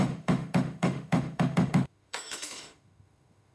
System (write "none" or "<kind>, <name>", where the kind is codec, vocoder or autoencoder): autoencoder, DAC-VAE